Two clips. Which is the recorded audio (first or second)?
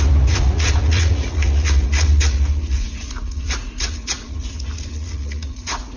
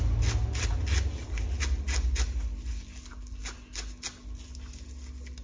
second